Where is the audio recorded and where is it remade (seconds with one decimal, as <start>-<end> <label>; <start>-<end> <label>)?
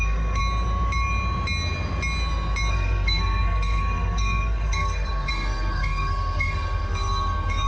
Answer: 0.0-0.4 remade; 0.4-2.7 recorded; 2.7-7.7 remade